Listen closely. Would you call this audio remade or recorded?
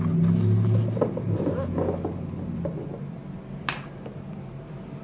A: recorded